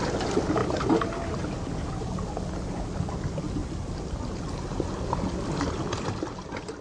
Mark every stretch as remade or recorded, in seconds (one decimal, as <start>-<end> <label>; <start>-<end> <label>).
0.0-3.6 recorded; 3.6-4.4 remade; 4.4-6.8 recorded